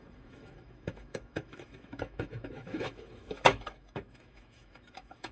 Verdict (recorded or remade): remade